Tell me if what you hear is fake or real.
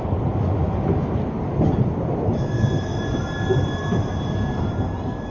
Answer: real